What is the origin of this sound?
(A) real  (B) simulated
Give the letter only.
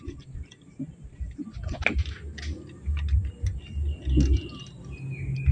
A